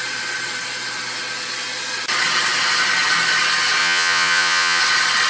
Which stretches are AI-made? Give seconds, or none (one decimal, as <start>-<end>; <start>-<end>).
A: 3.8-4.8